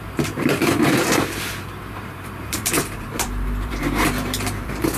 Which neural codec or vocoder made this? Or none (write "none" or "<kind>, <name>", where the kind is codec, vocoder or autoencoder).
vocoder, BigVGAN v2